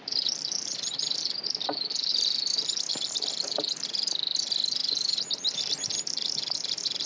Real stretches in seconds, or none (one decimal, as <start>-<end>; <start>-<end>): 2.1-2.9; 4.8-5.9